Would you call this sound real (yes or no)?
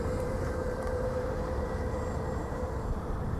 no